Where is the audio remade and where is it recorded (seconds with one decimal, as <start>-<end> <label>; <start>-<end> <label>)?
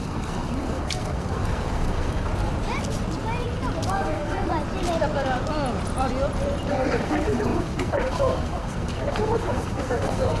0.0-2.3 remade; 2.3-3.9 recorded; 3.9-4.5 remade; 4.5-6.7 recorded; 6.7-10.4 remade